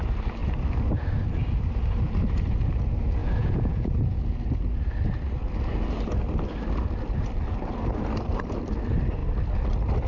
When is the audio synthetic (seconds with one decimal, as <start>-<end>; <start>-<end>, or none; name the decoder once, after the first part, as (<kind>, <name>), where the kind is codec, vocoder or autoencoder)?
3.2-4.2 (vocoder, Vocos)